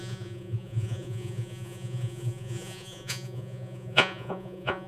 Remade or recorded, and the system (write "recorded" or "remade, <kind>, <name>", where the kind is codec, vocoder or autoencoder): remade, vocoder, Vocos